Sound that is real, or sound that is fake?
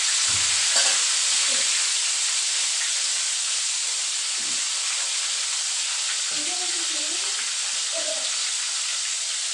real